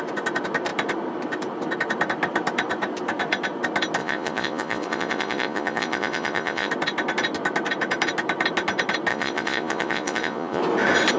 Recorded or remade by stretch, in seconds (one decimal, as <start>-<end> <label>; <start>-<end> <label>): 0.0-4.0 recorded; 4.0-6.7 remade; 6.7-9.1 recorded; 9.1-10.6 remade; 10.6-11.2 recorded